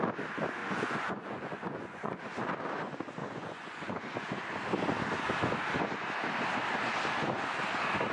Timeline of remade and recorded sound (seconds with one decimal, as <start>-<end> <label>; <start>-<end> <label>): 0.0-0.6 recorded; 0.6-2.2 remade; 2.2-3.2 recorded; 3.2-4.3 remade; 4.3-8.1 recorded